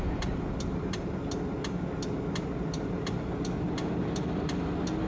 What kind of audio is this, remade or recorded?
recorded